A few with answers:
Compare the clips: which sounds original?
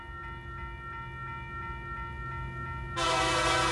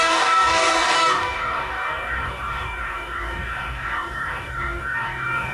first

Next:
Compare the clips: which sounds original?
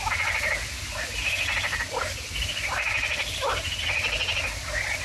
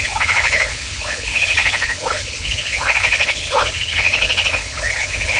first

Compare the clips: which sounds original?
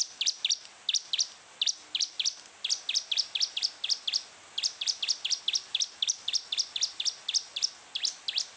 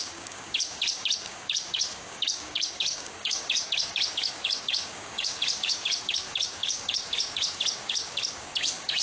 first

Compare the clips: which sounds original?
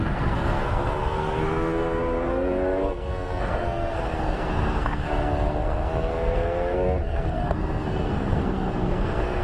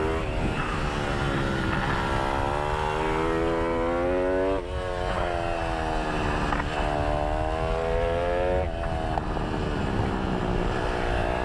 second